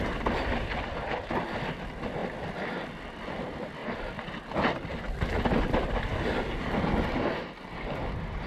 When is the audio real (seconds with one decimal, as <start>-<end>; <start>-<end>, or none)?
0.0-2.2; 3.4-8.5